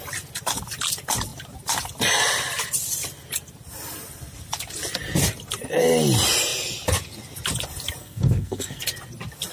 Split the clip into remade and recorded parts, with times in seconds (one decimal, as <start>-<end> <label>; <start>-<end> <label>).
0.0-8.0 recorded; 8.0-8.8 remade; 8.8-9.5 recorded